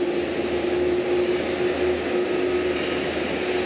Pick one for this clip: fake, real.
real